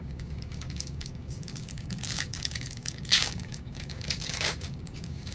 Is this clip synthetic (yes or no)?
yes